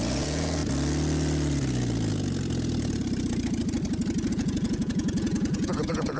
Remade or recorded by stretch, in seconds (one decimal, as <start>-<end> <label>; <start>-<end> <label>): 0.0-0.6 remade; 0.6-4.3 recorded; 4.3-6.2 remade